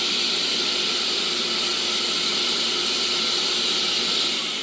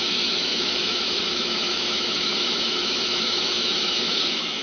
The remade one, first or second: second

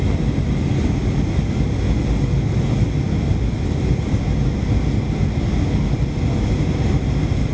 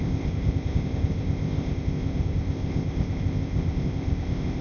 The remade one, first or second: second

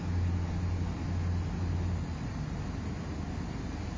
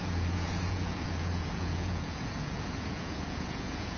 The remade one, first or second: second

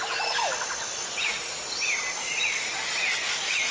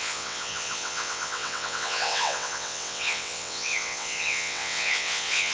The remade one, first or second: second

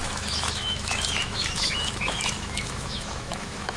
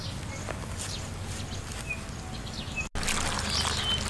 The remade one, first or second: first